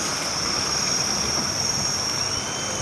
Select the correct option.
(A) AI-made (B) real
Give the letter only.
B